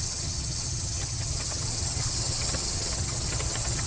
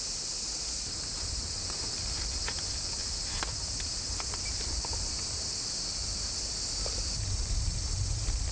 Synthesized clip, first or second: first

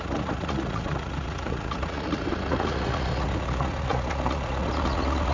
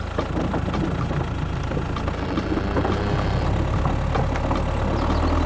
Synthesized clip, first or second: first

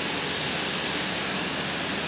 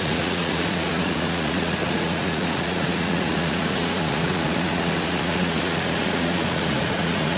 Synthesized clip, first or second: second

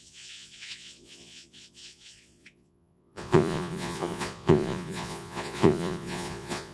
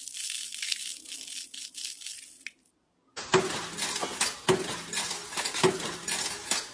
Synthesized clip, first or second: first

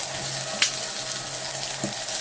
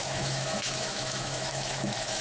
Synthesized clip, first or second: second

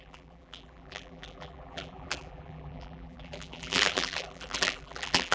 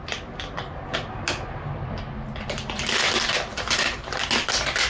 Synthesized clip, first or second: first